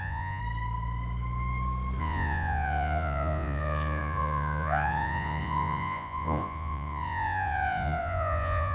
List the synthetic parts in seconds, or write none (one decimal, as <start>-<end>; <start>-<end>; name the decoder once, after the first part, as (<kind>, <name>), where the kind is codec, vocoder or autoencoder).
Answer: 0.0-0.4 (vocoder, Vocos); 2.0-8.7